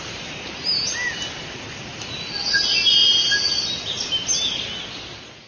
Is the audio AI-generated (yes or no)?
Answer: no